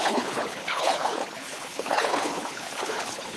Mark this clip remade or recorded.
remade